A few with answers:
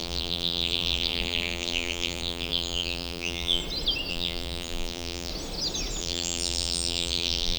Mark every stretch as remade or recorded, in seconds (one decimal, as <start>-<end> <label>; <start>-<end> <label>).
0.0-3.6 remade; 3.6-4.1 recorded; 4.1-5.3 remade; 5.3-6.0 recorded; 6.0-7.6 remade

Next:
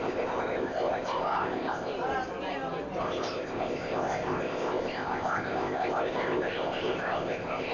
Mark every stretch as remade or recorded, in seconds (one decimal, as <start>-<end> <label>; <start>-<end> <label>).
0.0-1.9 remade; 1.9-3.0 recorded; 3.0-7.7 remade

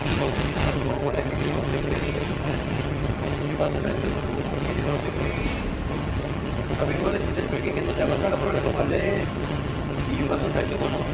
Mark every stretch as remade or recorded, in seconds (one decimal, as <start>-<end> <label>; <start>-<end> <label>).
0.0-5.4 remade; 5.4-5.9 recorded; 5.9-11.1 remade